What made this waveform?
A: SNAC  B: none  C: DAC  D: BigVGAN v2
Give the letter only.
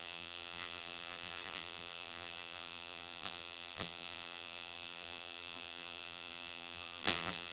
D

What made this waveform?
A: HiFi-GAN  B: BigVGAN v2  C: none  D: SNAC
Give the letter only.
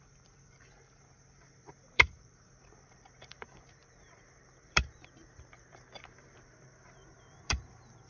B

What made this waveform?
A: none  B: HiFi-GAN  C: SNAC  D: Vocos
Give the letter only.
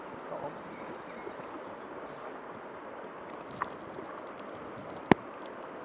A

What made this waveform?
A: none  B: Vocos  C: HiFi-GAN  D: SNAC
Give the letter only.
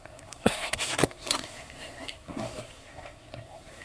D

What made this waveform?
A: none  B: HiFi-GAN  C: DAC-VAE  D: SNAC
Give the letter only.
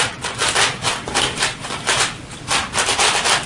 A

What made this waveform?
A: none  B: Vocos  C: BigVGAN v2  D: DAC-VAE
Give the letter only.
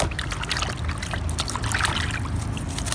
A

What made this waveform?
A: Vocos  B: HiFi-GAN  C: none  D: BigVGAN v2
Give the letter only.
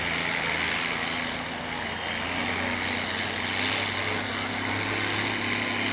C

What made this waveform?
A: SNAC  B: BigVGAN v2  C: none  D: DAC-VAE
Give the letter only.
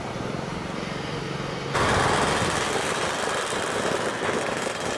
C